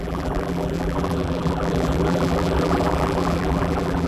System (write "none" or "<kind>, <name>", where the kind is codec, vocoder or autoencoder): vocoder, BigVGAN v2